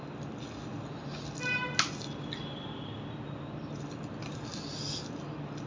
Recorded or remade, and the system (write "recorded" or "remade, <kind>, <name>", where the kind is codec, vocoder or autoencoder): recorded